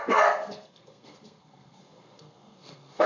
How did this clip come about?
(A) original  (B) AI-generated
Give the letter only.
B